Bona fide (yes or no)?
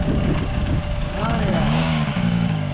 no